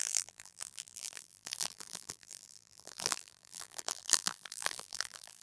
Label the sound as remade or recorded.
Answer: remade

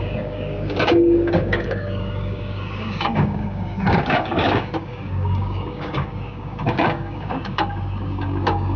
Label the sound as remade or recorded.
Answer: remade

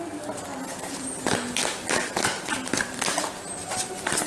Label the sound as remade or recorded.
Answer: recorded